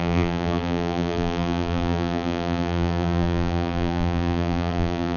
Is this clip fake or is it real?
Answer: fake